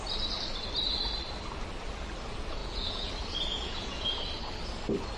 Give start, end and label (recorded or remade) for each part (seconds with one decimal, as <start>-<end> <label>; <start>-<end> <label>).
0.0-2.6 recorded; 2.6-3.1 remade; 3.1-3.5 recorded; 3.5-4.1 remade; 4.1-5.2 recorded

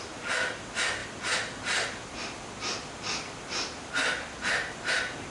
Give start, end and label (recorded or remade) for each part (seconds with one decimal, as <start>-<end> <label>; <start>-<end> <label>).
0.0-1.0 recorded; 1.0-2.6 remade; 2.6-5.3 recorded

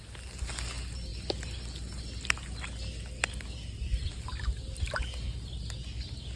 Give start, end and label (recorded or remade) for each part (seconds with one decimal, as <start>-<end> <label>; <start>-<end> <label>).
0.0-6.4 recorded